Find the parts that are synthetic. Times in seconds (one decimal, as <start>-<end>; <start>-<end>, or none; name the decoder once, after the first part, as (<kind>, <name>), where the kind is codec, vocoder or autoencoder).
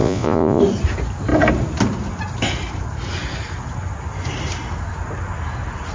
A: 0.0-0.6 (vocoder, Vocos)